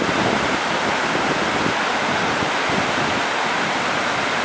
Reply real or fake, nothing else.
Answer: real